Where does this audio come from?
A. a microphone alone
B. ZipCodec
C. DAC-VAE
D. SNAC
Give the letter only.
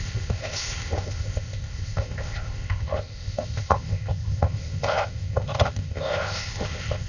B